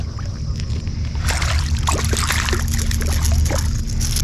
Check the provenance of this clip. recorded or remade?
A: recorded